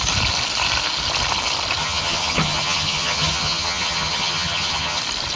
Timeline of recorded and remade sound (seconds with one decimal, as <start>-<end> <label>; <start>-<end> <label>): 0.0-1.8 recorded; 1.8-5.0 remade; 5.0-5.4 recorded